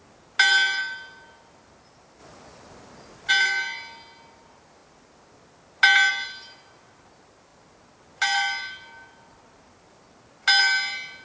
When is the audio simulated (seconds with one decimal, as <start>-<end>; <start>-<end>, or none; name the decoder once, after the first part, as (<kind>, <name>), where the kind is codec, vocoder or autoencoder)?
none